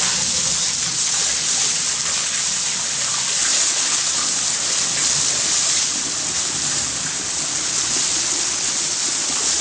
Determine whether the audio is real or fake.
real